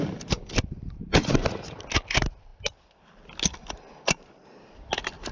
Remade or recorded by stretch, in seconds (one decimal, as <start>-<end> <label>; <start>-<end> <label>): 0.0-1.1 recorded; 1.1-1.8 remade; 1.8-5.3 recorded